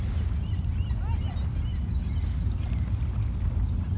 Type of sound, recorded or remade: recorded